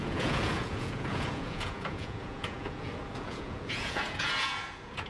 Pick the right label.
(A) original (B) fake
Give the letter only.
B